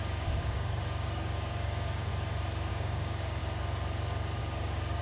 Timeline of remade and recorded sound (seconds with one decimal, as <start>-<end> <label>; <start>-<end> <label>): 0.0-2.1 remade; 2.1-2.7 recorded; 2.7-3.4 remade; 3.4-4.4 recorded; 4.4-5.0 remade